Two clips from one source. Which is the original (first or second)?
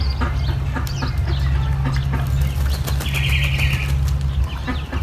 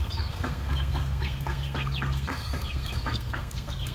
first